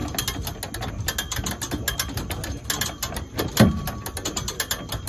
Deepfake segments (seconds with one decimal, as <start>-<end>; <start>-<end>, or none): none